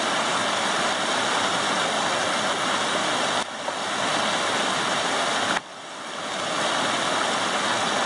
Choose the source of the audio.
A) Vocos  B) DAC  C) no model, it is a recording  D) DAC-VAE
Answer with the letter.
C